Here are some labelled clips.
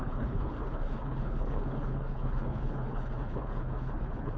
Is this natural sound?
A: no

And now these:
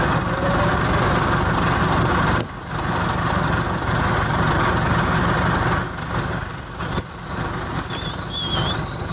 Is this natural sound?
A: yes